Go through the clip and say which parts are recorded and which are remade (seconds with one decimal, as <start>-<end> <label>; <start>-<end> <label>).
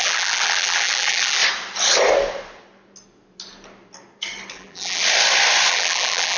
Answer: 0.0-1.4 remade; 1.4-4.5 recorded; 4.5-5.0 remade; 5.0-5.7 recorded; 5.7-6.4 remade